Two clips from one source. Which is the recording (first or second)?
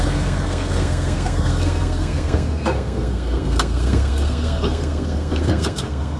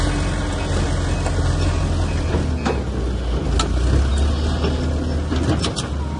second